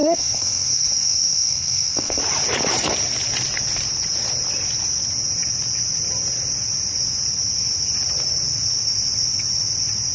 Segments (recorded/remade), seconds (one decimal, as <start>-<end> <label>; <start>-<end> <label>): 0.0-2.2 remade; 2.2-10.1 recorded